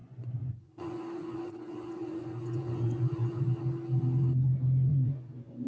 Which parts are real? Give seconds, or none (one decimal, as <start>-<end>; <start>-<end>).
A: 3.4-4.9